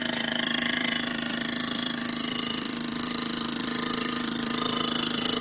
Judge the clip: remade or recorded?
remade